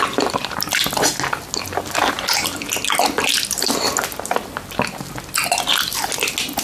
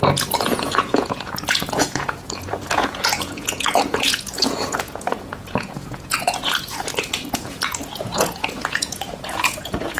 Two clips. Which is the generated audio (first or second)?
second